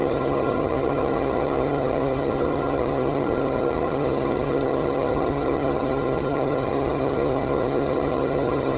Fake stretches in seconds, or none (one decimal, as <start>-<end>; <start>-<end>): 0.0-8.8